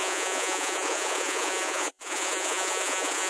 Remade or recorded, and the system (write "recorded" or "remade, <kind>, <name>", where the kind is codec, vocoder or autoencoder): remade, vocoder, Vocos